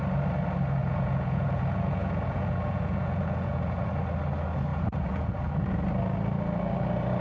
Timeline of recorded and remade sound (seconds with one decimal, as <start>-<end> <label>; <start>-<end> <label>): 0.0-0.8 recorded; 0.8-4.0 remade; 4.0-4.7 recorded; 4.7-5.7 remade; 5.7-7.2 recorded